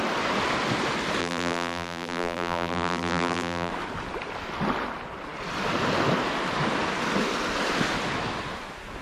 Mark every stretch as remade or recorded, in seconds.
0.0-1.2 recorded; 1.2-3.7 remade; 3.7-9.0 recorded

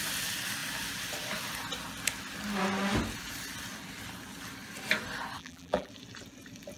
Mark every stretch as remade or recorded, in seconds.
0.0-5.4 recorded; 5.4-5.9 remade; 5.9-6.8 recorded

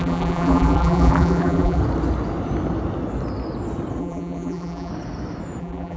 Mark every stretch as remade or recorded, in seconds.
0.0-1.8 remade; 1.8-4.0 recorded; 4.0-4.9 remade; 4.9-5.6 recorded; 5.6-6.0 remade

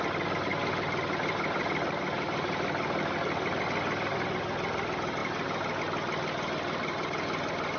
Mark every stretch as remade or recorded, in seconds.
0.0-0.5 recorded; 0.5-3.6 remade; 3.6-7.8 recorded

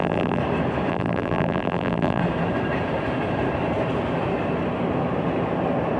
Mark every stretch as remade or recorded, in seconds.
0.0-0.4 remade; 0.4-0.9 recorded; 0.9-2.2 remade; 2.2-6.0 recorded